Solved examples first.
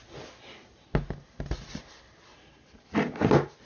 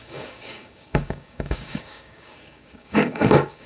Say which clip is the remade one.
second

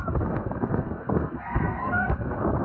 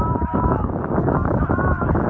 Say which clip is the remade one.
first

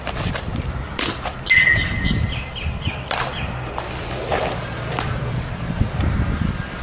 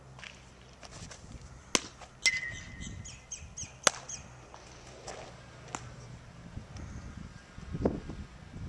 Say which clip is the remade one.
first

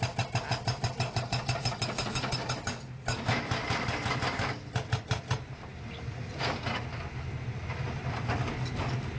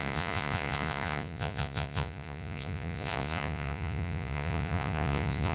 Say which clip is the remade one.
second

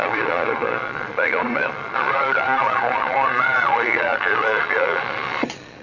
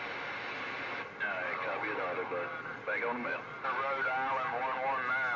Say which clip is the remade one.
first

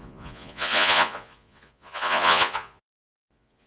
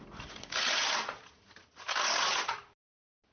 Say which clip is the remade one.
first